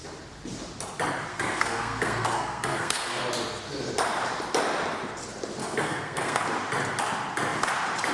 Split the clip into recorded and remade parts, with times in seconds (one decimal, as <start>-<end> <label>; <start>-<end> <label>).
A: 0.0-1.3 recorded; 1.3-3.2 remade; 3.2-5.6 recorded; 5.6-6.4 remade; 6.4-8.1 recorded